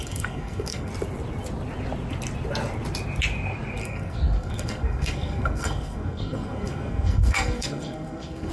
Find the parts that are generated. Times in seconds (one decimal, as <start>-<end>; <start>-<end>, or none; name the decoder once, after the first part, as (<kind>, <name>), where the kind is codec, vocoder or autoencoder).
0.0-0.9 (codec, SNAC); 3.8-8.5